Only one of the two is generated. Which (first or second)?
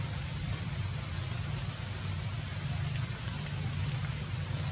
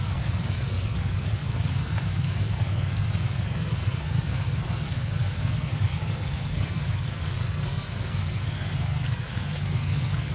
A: second